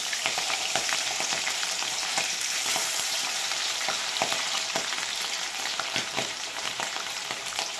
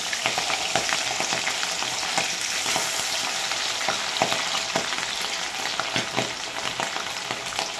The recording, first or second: second